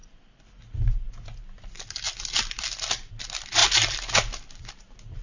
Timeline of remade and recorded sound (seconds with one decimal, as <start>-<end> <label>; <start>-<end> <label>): 0.0-3.1 remade; 3.1-3.6 recorded; 3.6-4.7 remade; 4.7-5.2 recorded